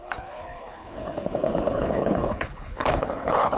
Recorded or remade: remade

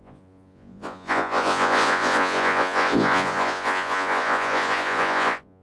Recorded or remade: remade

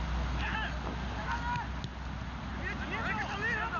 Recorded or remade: recorded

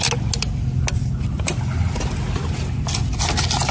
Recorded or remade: recorded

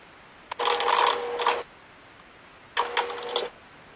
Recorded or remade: recorded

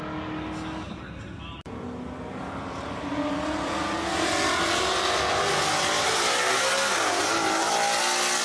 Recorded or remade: recorded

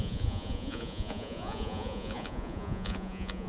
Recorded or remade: remade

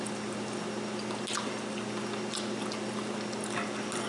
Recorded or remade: recorded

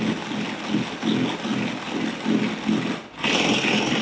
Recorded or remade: recorded